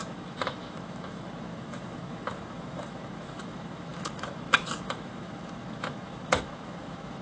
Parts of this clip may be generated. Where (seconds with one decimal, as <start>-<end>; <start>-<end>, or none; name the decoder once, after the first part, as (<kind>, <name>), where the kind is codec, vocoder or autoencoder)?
0.0-7.2 (autoencoder, DAC-VAE)